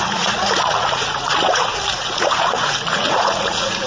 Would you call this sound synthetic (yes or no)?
yes